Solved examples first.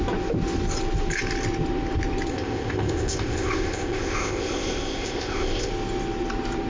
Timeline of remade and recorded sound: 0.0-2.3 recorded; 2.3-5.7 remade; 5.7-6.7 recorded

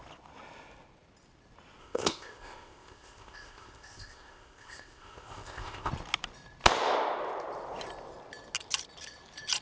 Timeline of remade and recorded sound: 0.0-1.8 recorded; 1.8-5.9 remade; 5.9-9.6 recorded

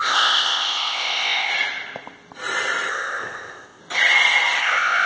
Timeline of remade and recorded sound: 0.0-1.5 remade; 1.5-2.9 recorded; 2.9-3.8 remade; 3.8-4.6 recorded; 4.6-5.1 remade

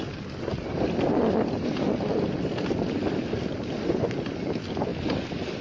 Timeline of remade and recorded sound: 0.0-5.6 recorded

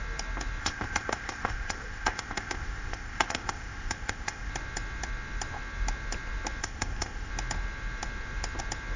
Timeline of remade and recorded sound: 0.0-0.6 recorded; 0.6-4.5 remade; 4.5-6.6 recorded; 6.6-7.3 remade; 7.3-9.0 recorded

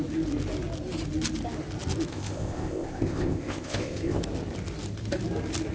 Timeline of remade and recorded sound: 0.0-2.1 recorded; 2.1-4.2 remade; 4.2-5.7 recorded